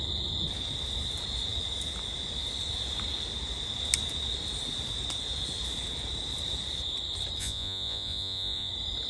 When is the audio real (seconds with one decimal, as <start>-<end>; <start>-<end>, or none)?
0.0-7.4; 8.7-9.1